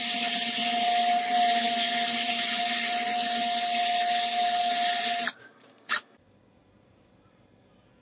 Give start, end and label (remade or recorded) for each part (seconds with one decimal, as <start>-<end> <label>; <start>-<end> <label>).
0.0-0.6 remade; 0.6-5.0 recorded; 5.0-8.0 remade